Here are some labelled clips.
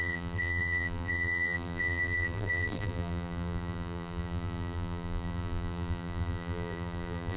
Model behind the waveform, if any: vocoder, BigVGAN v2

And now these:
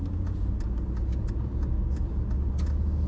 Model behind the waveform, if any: none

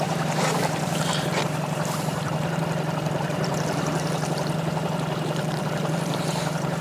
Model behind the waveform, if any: vocoder, BigVGAN v2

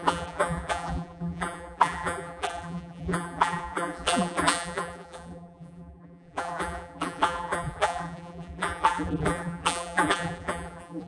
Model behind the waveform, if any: vocoder, BigVGAN v2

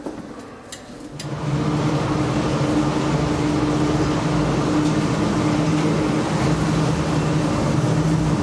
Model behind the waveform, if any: none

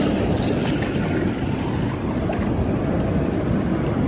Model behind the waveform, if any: vocoder, BigVGAN v2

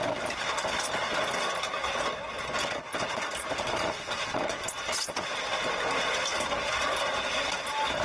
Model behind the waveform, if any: none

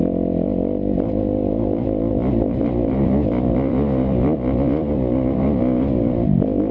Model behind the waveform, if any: vocoder, BigVGAN v2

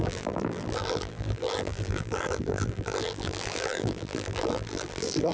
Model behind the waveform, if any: vocoder, BigVGAN v2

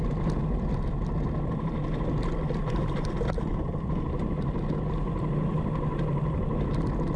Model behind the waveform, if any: none